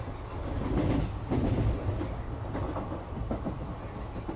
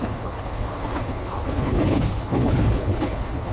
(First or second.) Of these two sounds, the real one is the first